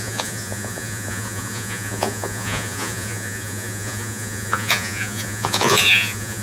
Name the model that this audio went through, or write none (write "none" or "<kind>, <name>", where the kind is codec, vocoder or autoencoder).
vocoder, Vocos